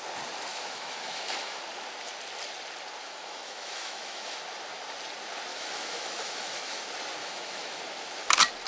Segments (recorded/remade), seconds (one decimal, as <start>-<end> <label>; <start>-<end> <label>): 0.0-0.5 recorded; 0.5-1.6 remade; 1.6-3.0 recorded; 3.0-4.4 remade; 4.4-5.5 recorded; 5.5-6.8 remade; 6.8-7.2 recorded; 7.2-7.8 remade; 7.8-8.7 recorded